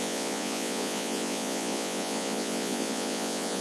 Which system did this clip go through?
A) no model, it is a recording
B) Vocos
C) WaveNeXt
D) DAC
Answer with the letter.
B